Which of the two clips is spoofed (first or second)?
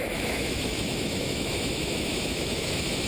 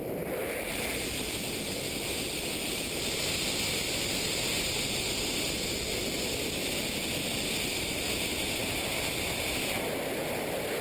first